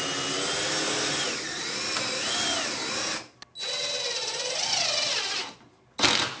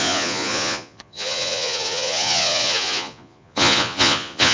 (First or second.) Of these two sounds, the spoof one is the second